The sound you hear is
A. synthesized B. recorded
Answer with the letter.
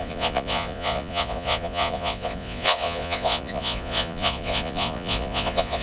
A